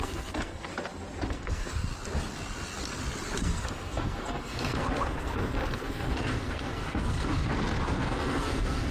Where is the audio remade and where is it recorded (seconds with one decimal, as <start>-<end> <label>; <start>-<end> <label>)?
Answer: 0.0-0.7 remade; 0.7-1.3 recorded; 1.3-1.9 remade; 1.9-3.4 recorded; 3.4-8.9 remade

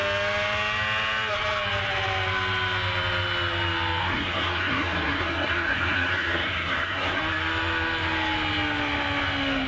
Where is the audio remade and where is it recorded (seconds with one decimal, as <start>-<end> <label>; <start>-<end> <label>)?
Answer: 0.0-4.0 recorded; 4.0-7.2 remade; 7.2-9.7 recorded

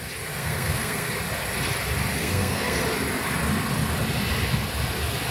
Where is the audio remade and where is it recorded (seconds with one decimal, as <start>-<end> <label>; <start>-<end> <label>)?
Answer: 0.0-0.4 recorded; 0.4-1.1 remade; 1.1-2.2 recorded; 2.2-2.8 remade; 2.8-5.3 recorded

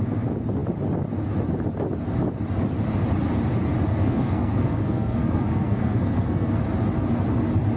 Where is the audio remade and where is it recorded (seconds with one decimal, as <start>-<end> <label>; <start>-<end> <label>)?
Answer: 0.0-3.9 recorded; 3.9-6.6 remade; 6.6-7.8 recorded